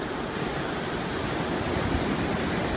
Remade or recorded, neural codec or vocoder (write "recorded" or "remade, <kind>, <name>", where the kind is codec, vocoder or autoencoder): recorded